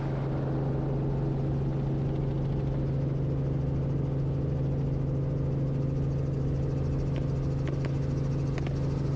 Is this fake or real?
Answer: real